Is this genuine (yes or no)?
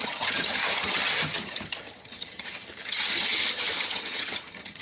no